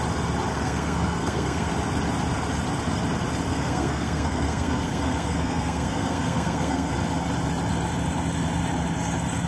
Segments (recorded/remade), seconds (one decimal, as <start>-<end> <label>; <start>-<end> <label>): 0.0-0.5 recorded; 0.5-1.7 remade; 1.7-3.5 recorded; 3.5-6.9 remade; 6.9-9.5 recorded